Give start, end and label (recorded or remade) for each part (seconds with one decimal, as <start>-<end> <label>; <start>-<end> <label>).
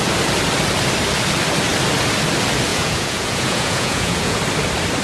0.0-2.7 recorded; 2.7-4.4 remade; 4.4-5.0 recorded